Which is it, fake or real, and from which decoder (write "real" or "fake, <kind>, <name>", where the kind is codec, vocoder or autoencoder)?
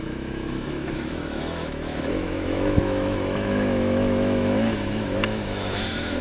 fake, autoencoder, DAC-VAE